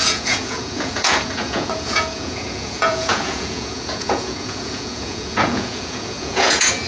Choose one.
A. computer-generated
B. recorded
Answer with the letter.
A